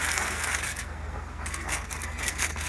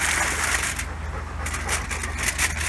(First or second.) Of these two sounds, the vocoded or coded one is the first